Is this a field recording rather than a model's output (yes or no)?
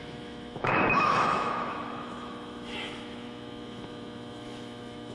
no